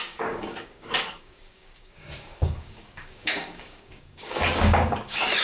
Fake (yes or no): yes